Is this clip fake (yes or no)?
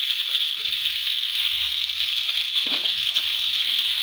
yes